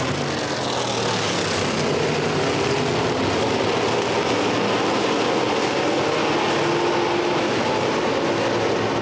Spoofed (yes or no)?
no